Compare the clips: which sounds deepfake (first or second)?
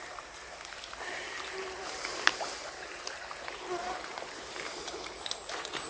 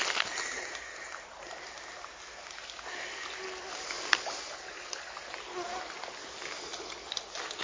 first